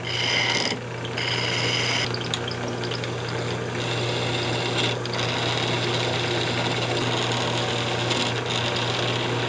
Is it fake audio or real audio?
real